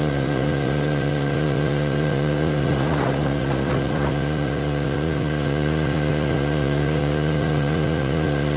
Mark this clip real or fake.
fake